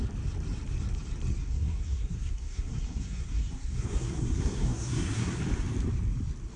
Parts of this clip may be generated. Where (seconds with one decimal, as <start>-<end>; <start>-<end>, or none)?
1.4-5.4